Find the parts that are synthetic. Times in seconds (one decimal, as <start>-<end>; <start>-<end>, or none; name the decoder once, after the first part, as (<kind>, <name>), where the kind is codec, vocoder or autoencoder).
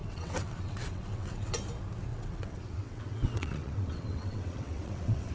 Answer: 0.0-1.6 (vocoder, WaveNeXt); 2.1-5.3